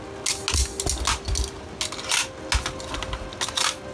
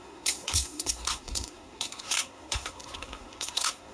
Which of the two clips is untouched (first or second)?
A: first